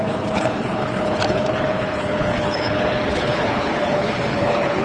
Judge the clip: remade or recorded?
remade